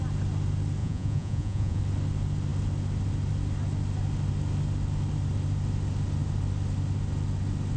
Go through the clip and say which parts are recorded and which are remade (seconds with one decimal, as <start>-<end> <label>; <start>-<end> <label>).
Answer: 0.0-0.8 recorded; 0.8-1.8 remade; 1.8-7.8 recorded